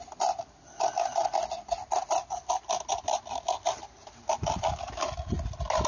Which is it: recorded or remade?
recorded